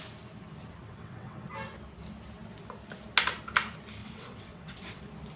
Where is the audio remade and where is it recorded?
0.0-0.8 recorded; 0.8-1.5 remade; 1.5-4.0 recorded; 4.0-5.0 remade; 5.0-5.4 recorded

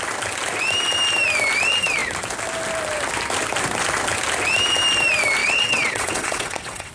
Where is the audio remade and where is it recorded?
0.0-5.4 recorded; 5.4-6.9 remade

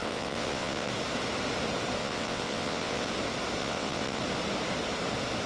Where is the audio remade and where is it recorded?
0.0-0.9 remade; 0.9-2.0 recorded; 2.0-3.1 remade; 3.1-3.6 recorded; 3.6-4.2 remade; 4.2-5.5 recorded

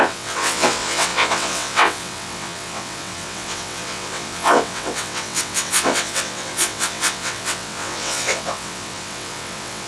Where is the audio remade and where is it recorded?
0.0-9.9 remade

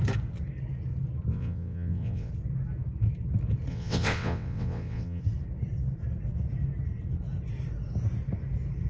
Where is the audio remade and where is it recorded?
0.0-1.3 recorded; 1.3-2.3 remade; 2.3-3.7 recorded; 3.7-5.2 remade; 5.2-8.9 recorded

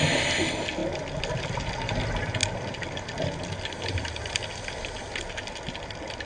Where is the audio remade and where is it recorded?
0.0-6.3 recorded